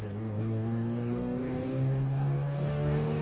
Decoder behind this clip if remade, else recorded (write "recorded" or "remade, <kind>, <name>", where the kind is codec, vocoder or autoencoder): remade, codec, DAC